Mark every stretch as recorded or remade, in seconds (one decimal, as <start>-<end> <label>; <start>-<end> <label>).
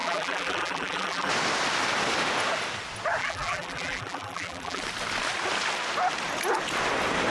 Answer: 0.0-1.3 remade; 1.3-3.2 recorded; 3.2-4.8 remade; 4.8-7.3 recorded